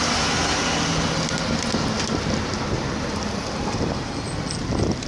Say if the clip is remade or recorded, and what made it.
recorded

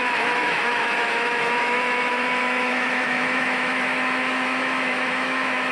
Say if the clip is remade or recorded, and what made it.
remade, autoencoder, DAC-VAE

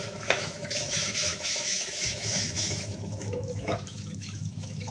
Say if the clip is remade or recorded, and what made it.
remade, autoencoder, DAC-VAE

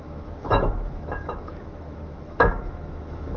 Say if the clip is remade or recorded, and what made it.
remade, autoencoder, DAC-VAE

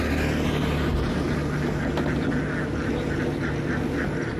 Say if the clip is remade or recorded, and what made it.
recorded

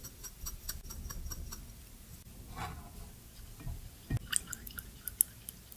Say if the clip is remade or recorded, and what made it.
recorded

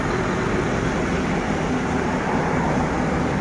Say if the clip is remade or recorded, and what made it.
recorded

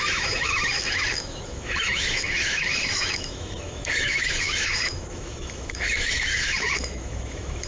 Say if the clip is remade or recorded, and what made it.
remade, autoencoder, DAC-VAE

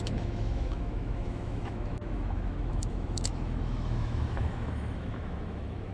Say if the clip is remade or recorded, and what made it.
remade, autoencoder, DAC-VAE